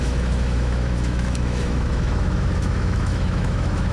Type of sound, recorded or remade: remade